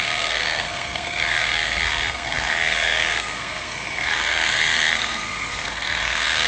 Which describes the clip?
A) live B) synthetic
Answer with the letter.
B